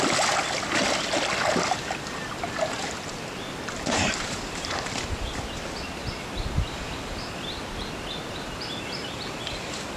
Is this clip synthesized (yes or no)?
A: no